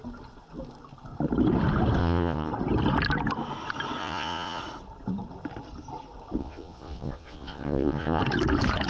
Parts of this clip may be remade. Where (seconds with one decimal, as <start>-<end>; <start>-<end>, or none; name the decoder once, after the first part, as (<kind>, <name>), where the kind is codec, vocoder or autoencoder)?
2.0-2.5 (vocoder, Vocos); 4.0-4.6; 6.4-8.2